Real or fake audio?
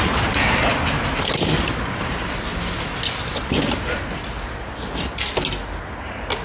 real